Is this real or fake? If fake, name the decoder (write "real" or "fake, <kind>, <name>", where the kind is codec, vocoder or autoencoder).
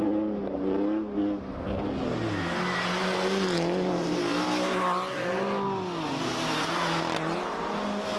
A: real